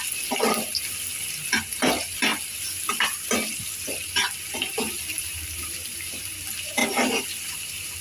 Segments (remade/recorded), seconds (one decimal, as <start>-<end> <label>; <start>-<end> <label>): 0.0-5.2 recorded; 5.2-6.2 remade; 6.2-8.0 recorded